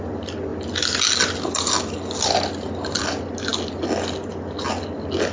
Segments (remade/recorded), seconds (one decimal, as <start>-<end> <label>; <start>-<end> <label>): 0.0-5.3 recorded